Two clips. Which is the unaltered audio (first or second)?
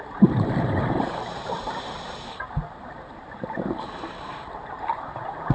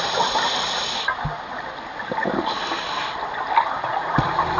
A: second